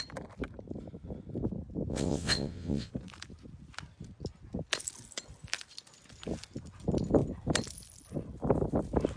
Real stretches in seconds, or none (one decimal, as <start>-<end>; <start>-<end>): 0.0-1.9; 2.9-9.2